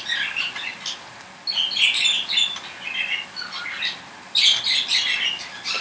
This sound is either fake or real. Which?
real